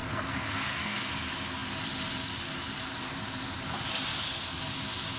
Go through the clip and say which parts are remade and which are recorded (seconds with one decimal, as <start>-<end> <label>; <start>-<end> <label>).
0.0-1.1 remade; 1.1-4.1 recorded; 4.1-4.6 remade; 4.6-5.2 recorded